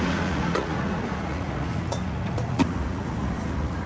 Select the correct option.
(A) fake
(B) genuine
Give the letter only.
A